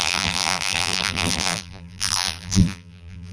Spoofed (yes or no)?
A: yes